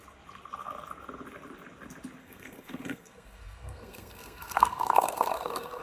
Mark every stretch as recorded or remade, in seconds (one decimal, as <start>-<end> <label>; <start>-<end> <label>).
0.0-2.2 recorded; 2.2-5.8 remade